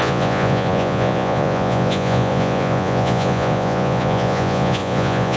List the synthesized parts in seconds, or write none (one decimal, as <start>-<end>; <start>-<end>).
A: 0.0-5.4